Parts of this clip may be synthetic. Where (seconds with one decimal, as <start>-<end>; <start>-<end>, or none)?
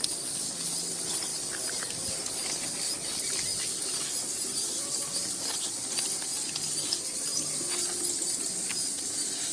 none